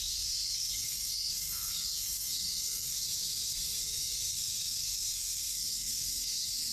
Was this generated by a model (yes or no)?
yes